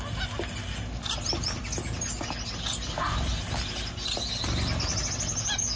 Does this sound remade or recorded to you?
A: recorded